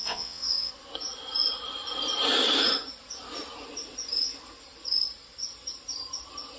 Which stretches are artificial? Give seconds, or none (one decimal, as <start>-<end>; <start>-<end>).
0.0-0.7